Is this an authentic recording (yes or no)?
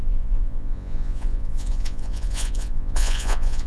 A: no